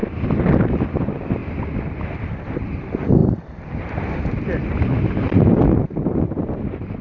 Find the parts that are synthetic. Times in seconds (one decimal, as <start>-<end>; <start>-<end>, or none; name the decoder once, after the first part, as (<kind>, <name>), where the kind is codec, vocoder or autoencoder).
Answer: 1.0-1.4 (vocoder, BigVGAN v2); 2.2-7.0